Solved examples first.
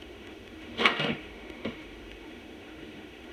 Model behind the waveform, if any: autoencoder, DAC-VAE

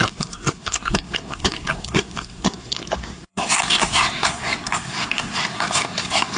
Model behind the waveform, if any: codec, SNAC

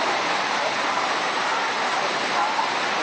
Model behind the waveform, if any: vocoder, BigVGAN v2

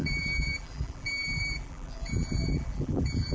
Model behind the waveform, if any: vocoder, BigVGAN v2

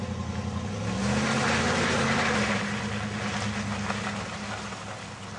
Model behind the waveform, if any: none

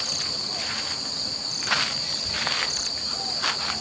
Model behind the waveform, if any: none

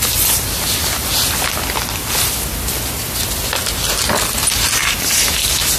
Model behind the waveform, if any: none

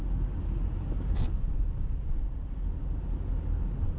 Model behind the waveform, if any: none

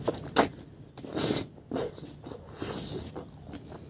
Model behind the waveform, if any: none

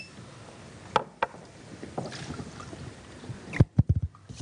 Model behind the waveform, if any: none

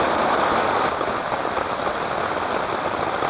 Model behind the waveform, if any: none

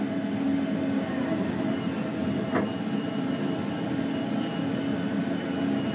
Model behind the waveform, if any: none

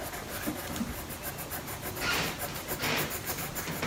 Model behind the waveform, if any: none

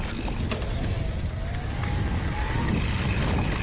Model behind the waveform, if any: none